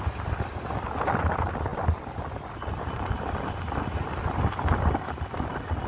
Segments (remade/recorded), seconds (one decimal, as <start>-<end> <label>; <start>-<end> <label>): 0.0-5.9 recorded